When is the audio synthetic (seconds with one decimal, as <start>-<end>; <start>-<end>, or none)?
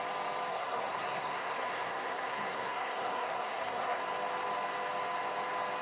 0.5-4.0